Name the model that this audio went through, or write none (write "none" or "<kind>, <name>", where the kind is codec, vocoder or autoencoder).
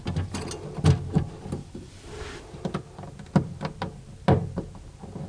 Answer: none